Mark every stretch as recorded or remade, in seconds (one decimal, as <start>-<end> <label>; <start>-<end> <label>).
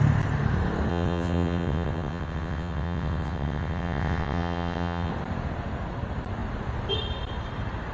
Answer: 0.0-0.9 recorded; 0.9-5.1 remade; 5.1-7.9 recorded